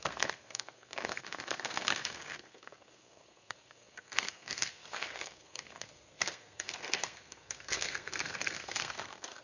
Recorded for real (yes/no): no